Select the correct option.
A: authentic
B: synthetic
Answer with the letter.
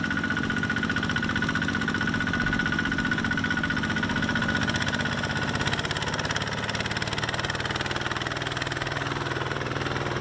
A